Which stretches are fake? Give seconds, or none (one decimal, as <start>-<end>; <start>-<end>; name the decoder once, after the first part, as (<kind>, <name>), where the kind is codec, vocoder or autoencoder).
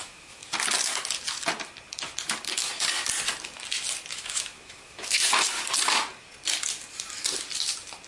0.0-0.4 (autoencoder, DAC-VAE); 4.1-5.2